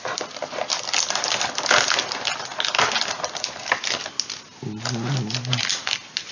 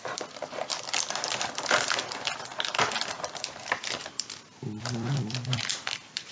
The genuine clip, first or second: first